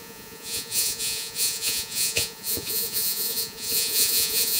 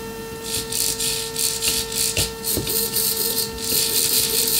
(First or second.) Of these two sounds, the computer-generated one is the first